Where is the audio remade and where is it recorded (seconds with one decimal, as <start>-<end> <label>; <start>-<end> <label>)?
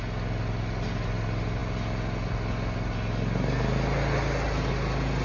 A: 0.0-5.2 recorded